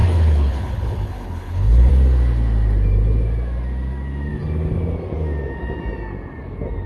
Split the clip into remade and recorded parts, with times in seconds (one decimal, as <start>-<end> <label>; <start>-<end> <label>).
0.0-1.9 remade; 1.9-6.9 recorded